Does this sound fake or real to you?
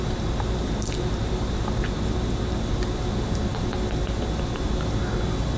fake